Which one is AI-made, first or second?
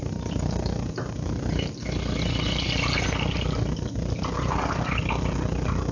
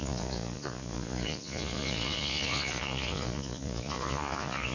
second